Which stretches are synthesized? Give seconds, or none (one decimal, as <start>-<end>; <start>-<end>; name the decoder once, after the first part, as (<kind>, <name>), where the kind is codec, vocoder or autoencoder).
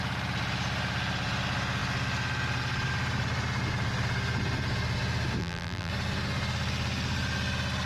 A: 5.4-5.9 (vocoder, BigVGAN v2)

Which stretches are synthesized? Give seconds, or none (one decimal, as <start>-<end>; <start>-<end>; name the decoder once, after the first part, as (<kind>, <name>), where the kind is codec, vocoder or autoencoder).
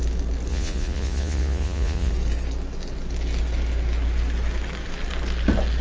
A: 0.5-2.1 (vocoder, Vocos)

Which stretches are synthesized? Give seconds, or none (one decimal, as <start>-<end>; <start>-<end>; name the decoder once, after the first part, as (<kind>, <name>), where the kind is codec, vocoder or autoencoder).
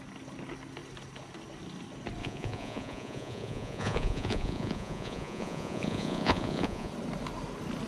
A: 2.2-6.9 (vocoder, Vocos)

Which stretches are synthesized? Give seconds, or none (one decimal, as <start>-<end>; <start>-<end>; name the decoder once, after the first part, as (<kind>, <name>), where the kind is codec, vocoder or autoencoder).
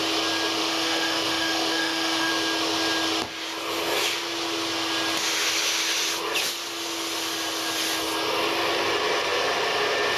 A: 0.6-2.3 (autoencoder, DAC-VAE)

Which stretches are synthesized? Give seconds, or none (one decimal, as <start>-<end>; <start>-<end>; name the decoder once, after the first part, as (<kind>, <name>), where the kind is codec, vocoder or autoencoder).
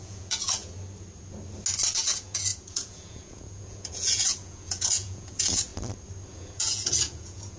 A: 0.0-0.6 (vocoder, Vocos); 1.9-5.7; 6.3-7.6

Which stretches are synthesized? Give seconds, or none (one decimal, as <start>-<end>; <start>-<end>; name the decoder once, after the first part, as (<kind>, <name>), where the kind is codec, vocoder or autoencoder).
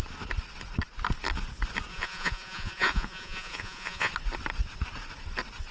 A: 1.9-4.1 (vocoder, Vocos)